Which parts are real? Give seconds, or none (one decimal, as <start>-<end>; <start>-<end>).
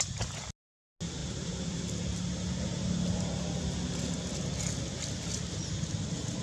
0.0-1.2; 1.8-6.4